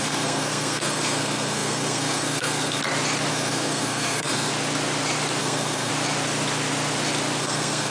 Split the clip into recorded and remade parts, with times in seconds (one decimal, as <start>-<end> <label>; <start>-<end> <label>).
0.0-2.8 remade; 2.8-3.3 recorded; 3.3-4.5 remade; 4.5-5.4 recorded; 5.4-5.9 remade; 5.9-7.4 recorded; 7.4-7.9 remade